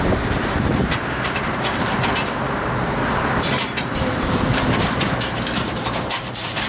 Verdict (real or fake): fake